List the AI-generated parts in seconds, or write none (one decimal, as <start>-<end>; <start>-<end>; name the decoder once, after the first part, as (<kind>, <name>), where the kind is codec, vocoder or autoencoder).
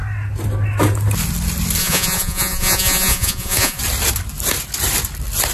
1.8-3.8 (vocoder, Vocos)